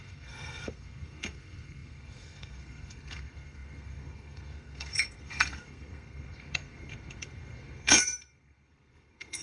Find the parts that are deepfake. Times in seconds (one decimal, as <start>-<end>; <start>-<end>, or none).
0.0-9.4

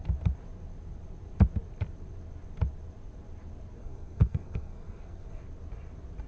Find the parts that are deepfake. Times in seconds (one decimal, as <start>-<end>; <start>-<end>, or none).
3.8-5.4

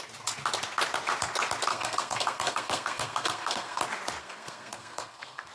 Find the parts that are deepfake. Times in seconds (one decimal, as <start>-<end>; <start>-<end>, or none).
1.7-3.8; 4.2-5.5

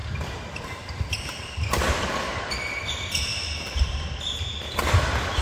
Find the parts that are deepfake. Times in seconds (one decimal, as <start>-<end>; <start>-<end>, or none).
none

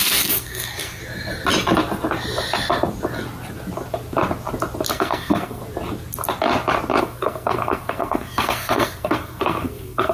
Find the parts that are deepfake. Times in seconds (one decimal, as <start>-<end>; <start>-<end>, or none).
0.0-1.0; 4.9-5.6; 7.0-10.1